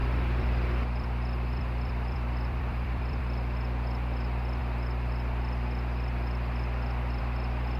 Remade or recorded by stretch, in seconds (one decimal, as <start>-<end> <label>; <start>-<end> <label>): 0.0-3.2 remade; 3.2-7.8 recorded